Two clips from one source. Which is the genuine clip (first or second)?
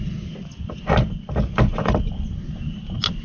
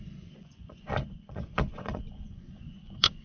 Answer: first